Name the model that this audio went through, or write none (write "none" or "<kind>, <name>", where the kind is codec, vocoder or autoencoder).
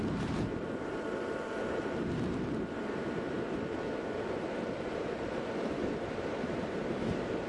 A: vocoder, BigVGAN v2